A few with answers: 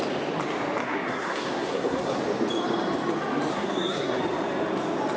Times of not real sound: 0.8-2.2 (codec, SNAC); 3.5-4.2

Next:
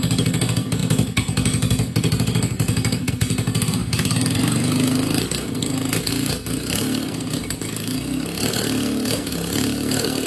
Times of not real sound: 0.0-10.3 (codec, SNAC)

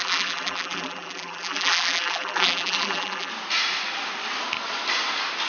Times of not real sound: 0.0-3.3 (vocoder, BigVGAN v2)

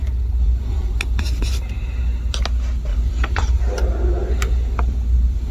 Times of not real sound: 0.0-1.5 (vocoder, BigVGAN v2); 2.9-3.6

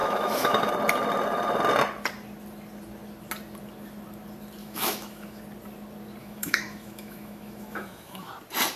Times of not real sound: 0.0-0.7 (autoencoder, DAC-VAE); 4.6-5.4; 6.2-8.3

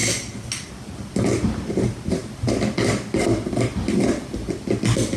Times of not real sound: none

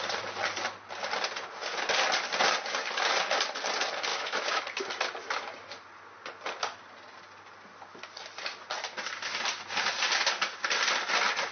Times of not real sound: 4.1-4.6 (autoencoder, DAC-VAE)